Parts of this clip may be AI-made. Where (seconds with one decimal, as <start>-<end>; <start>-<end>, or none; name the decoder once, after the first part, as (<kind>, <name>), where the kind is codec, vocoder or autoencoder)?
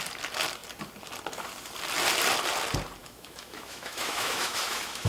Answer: 3.0-5.1 (autoencoder, DAC-VAE)